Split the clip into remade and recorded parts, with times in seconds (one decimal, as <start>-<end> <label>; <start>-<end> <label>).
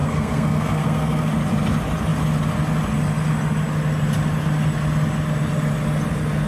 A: 0.0-1.3 remade; 1.3-6.5 recorded